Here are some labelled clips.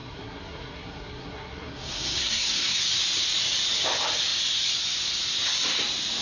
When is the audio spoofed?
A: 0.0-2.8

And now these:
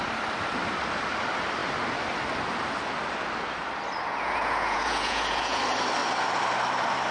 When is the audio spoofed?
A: 4.1-5.6

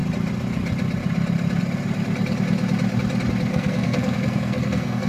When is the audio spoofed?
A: 3.5-5.1

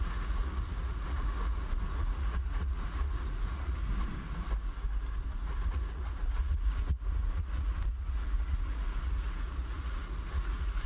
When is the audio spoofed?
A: 0.0-3.8; 5.3-10.9

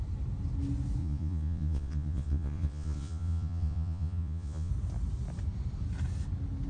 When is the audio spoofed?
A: 1.0-4.7